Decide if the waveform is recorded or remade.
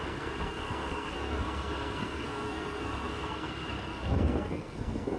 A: remade